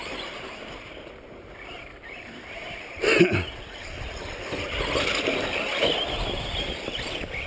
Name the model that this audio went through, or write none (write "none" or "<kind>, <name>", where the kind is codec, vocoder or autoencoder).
none